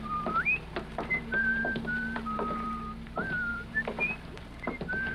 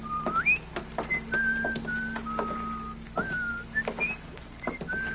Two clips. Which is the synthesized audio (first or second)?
first